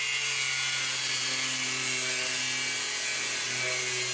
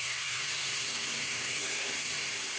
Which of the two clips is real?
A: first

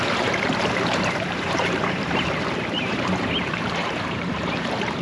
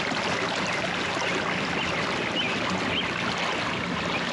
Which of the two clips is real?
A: second